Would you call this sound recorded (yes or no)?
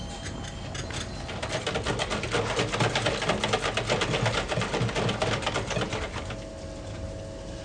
yes